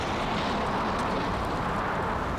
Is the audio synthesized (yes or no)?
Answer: no